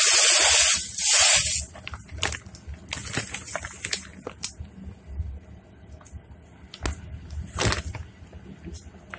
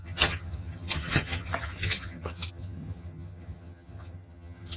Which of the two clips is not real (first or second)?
second